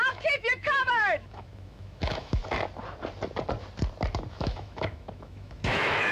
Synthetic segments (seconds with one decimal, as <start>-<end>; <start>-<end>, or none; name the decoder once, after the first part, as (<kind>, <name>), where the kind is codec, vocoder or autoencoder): 0.0-2.4 (autoencoder, DAC-VAE); 4.3-6.1